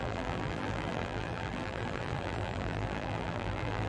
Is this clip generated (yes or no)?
yes